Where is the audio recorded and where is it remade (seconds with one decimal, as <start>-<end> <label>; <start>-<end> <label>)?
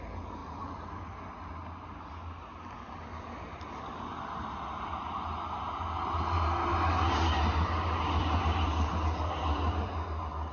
0.0-10.5 recorded